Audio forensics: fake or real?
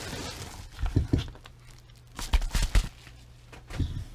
real